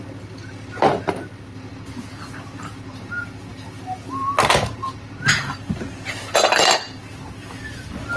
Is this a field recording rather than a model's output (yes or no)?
yes